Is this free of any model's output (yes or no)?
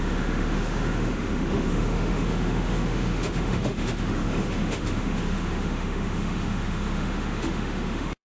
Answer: no